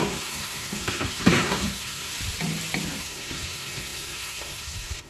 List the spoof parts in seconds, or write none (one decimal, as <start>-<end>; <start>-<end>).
0.0-2.1; 3.0-5.1